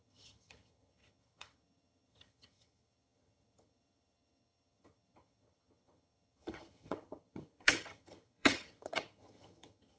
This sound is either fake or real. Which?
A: fake